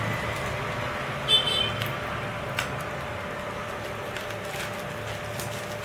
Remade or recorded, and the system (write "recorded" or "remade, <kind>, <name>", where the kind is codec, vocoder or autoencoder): recorded